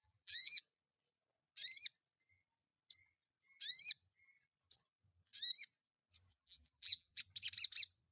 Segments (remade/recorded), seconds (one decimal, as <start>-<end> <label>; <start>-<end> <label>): 0.0-0.6 remade; 0.6-6.3 recorded; 6.3-7.2 remade; 7.2-8.1 recorded